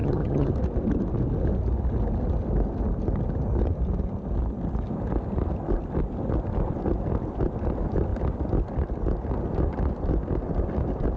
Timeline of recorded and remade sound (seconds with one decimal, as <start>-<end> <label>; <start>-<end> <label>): 0.0-0.5 remade; 0.5-11.2 recorded